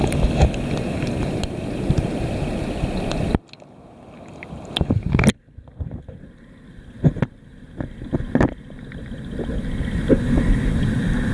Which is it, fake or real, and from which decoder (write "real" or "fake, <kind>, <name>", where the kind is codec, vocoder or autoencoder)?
real